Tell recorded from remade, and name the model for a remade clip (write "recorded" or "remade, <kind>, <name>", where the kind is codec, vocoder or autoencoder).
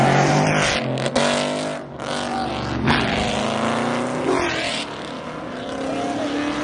recorded